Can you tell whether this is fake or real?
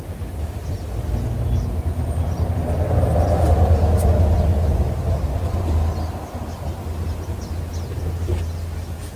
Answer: real